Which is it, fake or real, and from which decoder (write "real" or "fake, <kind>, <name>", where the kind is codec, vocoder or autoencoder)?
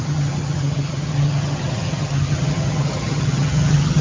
fake, vocoder, HiFi-GAN